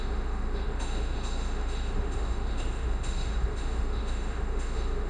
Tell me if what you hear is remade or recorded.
remade